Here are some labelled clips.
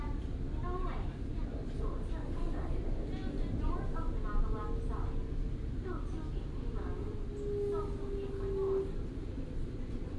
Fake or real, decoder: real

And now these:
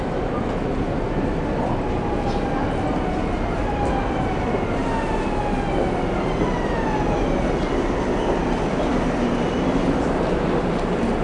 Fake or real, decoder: real